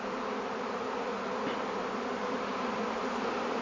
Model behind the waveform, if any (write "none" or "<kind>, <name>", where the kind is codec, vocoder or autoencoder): none